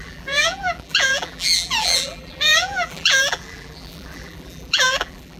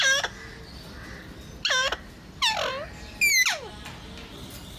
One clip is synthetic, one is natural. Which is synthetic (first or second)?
first